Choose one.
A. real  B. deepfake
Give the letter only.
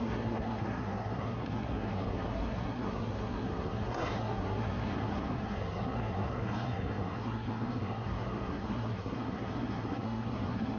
B